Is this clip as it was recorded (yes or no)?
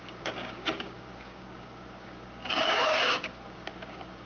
no